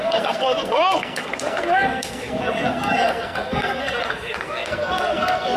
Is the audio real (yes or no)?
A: no